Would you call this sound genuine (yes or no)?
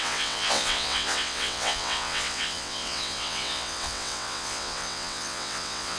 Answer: no